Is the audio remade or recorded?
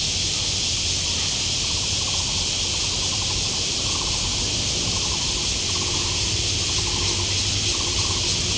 recorded